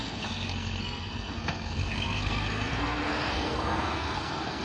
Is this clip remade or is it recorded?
remade